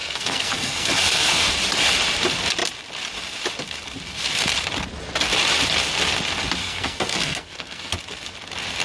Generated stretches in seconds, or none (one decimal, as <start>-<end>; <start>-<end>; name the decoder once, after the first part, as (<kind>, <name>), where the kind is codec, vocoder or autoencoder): 0.0-1.5 (codec, SNAC); 6.6-7.9